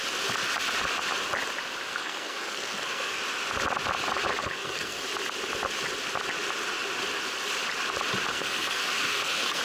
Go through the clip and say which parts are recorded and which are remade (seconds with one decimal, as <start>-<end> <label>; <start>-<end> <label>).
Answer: 0.0-1.9 recorded; 1.9-3.2 remade; 3.2-4.4 recorded; 4.4-5.0 remade; 5.0-8.3 recorded; 8.3-9.6 remade